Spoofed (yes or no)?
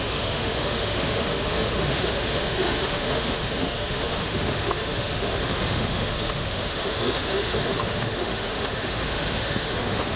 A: yes